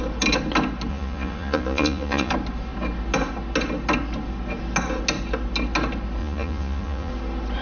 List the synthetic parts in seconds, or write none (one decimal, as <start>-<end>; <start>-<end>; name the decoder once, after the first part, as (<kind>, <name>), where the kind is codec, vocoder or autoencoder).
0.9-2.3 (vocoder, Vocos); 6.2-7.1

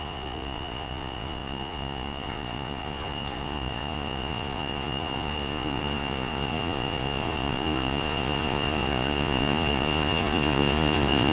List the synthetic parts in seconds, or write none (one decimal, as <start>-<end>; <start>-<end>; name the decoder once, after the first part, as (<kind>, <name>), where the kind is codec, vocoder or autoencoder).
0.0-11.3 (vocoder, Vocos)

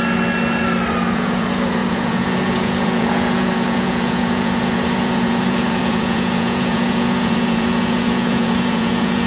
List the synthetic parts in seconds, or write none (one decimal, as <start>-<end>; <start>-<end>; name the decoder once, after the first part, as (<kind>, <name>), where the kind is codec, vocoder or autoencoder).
1.1-9.3 (vocoder, Vocos)